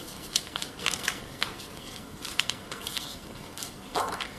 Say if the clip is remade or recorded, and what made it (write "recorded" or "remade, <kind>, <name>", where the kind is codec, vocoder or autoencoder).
remade, codec, SNAC